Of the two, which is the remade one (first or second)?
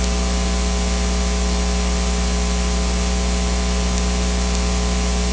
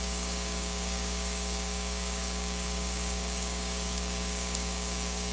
second